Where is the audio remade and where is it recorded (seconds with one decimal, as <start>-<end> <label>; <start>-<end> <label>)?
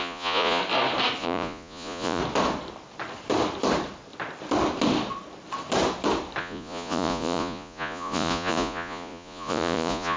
0.0-0.6 remade; 0.6-1.2 recorded; 1.2-2.2 remade; 2.2-6.4 recorded; 6.4-10.2 remade